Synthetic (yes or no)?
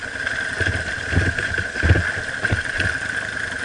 no